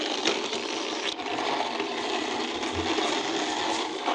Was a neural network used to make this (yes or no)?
no